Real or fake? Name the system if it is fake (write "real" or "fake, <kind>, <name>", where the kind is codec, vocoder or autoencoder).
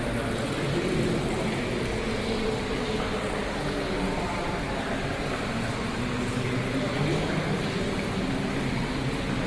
real